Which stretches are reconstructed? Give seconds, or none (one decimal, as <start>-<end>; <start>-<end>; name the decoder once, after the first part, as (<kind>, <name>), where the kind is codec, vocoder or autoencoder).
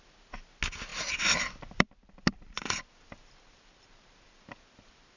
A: 0.9-3.8 (vocoder, BigVGAN v2)